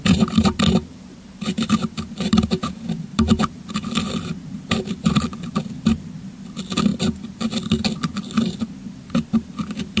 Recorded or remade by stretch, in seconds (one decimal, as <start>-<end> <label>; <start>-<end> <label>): 0.0-10.0 remade